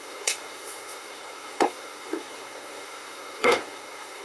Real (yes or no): no